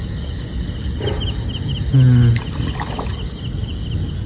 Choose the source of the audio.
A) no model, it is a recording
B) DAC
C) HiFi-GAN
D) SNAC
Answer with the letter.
A